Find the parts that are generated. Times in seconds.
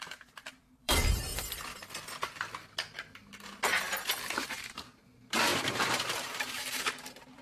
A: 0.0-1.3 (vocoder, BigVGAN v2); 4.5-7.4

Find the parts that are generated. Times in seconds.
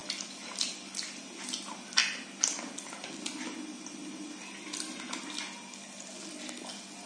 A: none